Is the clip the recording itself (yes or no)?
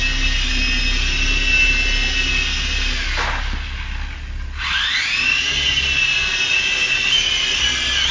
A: yes